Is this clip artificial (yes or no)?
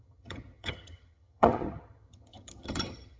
yes